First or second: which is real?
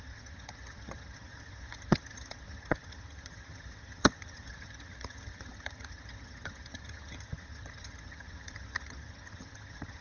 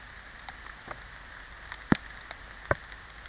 second